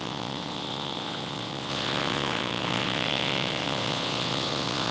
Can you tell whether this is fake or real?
fake